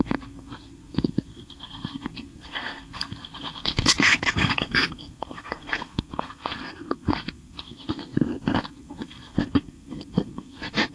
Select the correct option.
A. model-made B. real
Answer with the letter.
A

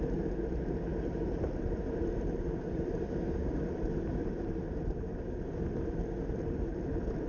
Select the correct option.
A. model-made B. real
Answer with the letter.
B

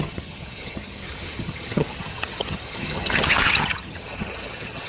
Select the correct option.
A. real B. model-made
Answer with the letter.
B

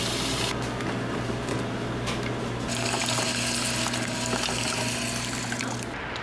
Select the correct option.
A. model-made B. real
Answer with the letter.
B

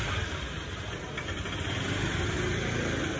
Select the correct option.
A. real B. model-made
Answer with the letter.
A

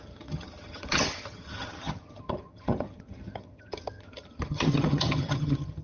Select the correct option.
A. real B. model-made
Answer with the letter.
B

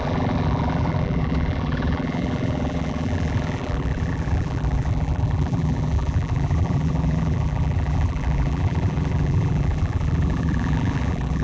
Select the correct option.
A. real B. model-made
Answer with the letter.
B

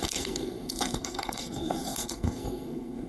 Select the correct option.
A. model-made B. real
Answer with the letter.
A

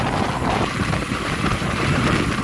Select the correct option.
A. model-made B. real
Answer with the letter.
B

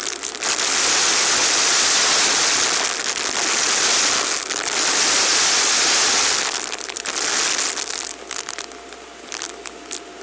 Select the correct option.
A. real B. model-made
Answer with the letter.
A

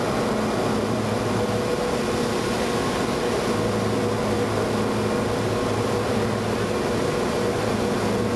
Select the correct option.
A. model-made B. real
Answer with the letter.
B